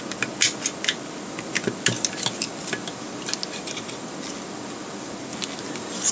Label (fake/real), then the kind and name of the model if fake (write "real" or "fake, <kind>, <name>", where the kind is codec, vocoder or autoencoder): real